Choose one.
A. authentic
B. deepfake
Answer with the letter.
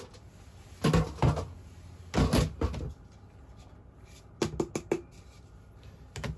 A